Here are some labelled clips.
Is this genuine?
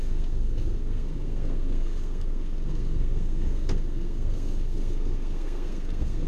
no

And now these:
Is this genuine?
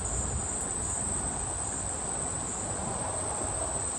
yes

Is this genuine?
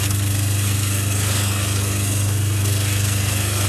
no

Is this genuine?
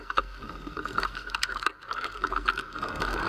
no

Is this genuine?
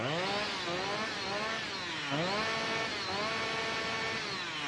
yes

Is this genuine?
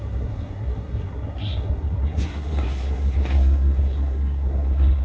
no